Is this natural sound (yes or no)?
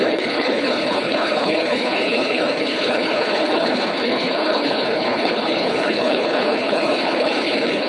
no